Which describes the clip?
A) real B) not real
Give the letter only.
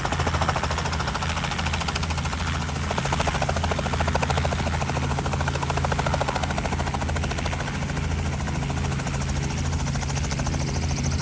A